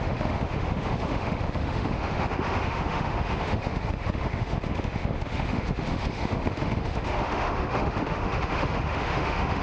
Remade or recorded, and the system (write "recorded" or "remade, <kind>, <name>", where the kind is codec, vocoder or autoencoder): remade, autoencoder, DAC-VAE